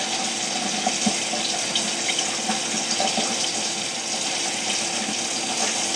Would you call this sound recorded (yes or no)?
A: yes